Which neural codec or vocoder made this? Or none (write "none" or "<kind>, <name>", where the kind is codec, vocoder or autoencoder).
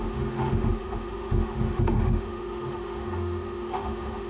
autoencoder, DAC-VAE